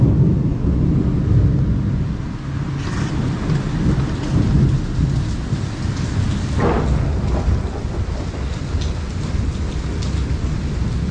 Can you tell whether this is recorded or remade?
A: recorded